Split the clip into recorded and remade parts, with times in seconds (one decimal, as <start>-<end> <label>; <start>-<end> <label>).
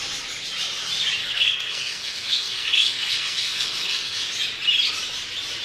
0.0-1.2 recorded; 1.2-4.3 remade; 4.3-5.6 recorded